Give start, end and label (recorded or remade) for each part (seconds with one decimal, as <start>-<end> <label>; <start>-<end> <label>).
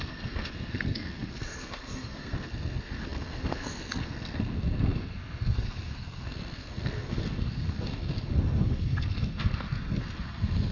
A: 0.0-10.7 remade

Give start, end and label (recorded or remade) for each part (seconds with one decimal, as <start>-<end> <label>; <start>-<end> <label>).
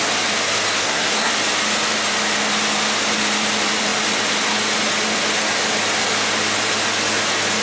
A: 0.0-0.8 recorded; 0.8-1.3 remade; 1.3-7.6 recorded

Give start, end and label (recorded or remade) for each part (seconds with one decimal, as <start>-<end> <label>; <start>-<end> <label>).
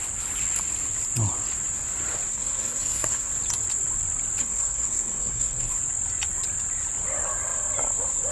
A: 0.0-2.3 recorded; 2.3-3.3 remade; 3.3-4.4 recorded; 4.4-5.8 remade; 5.8-8.3 recorded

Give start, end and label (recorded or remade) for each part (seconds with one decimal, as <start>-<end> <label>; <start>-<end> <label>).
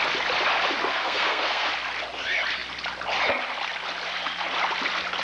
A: 0.0-0.9 recorded; 0.9-1.7 remade; 1.7-5.2 recorded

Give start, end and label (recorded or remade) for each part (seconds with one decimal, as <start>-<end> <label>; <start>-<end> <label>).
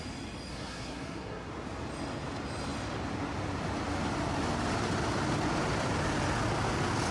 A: 0.0-0.5 recorded; 0.5-1.5 remade; 1.5-7.1 recorded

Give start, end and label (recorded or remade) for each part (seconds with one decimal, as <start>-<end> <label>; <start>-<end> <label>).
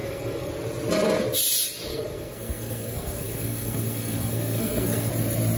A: 0.0-0.5 remade; 0.5-1.9 recorded; 1.9-5.1 remade; 5.1-5.6 recorded